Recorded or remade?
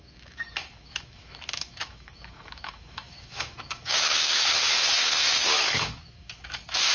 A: remade